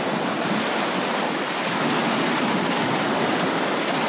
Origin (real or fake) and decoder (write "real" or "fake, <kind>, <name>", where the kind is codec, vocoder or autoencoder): real